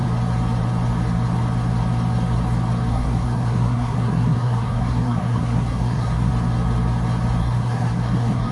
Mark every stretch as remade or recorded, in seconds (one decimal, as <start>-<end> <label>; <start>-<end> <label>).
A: 0.0-2.9 recorded; 2.9-6.3 remade; 6.3-7.4 recorded; 7.4-8.5 remade